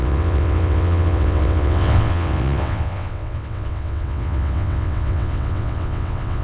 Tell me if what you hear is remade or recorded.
remade